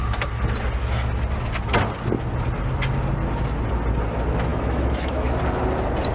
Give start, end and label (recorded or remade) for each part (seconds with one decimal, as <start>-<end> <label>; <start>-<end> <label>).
0.0-4.5 recorded; 4.5-5.3 remade; 5.3-6.1 recorded